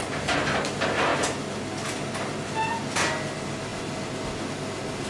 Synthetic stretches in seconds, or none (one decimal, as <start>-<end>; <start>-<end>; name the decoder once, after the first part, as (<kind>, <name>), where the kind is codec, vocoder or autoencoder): none